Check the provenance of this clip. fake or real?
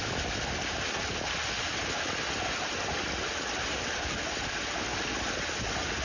real